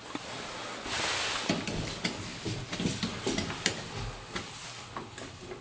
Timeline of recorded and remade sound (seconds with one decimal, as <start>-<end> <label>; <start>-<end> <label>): 0.0-5.6 recorded